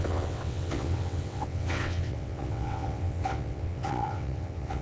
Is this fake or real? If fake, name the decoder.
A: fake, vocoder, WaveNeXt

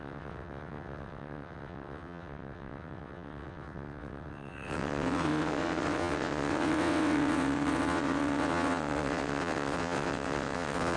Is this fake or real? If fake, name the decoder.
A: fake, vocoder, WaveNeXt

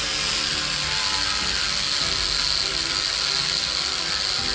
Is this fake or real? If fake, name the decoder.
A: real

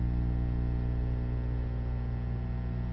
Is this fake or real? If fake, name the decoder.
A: real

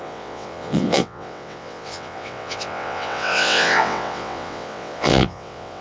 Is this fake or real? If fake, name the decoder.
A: fake, vocoder, WaveNeXt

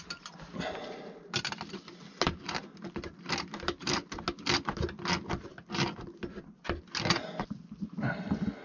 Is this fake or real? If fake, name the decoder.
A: real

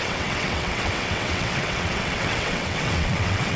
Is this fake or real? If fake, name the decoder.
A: fake, vocoder, WaveNeXt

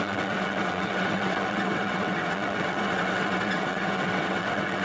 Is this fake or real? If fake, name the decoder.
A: fake, vocoder, WaveNeXt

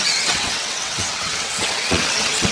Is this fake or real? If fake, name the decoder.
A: fake, vocoder, WaveNeXt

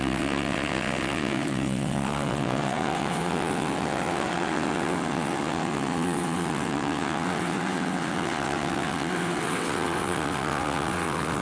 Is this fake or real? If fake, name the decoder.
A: fake, vocoder, WaveNeXt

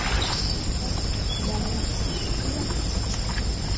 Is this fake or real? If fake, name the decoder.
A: real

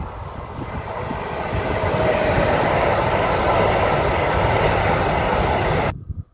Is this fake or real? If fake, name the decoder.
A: real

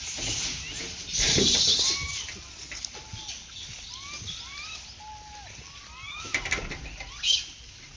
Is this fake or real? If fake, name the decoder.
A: real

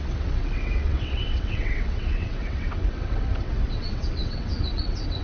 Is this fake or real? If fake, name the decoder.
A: fake, vocoder, WaveNeXt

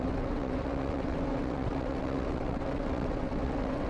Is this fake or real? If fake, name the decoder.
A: fake, vocoder, WaveNeXt